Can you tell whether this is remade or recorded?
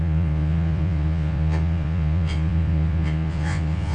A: remade